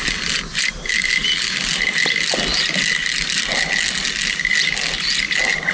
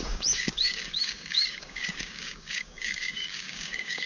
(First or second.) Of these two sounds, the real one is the first